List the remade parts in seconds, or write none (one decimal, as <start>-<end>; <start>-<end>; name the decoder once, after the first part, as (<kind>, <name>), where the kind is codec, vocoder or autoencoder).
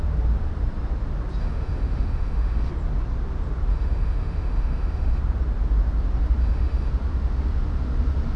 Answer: 1.4-2.7 (autoencoder, DAC-VAE); 3.7-5.2; 6.4-6.9